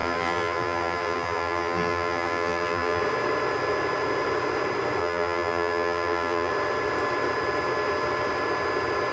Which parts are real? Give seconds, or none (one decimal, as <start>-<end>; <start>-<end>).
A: 3.0-5.0; 6.5-9.1